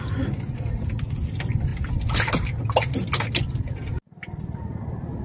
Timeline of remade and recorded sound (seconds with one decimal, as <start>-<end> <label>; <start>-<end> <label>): 0.0-5.2 recorded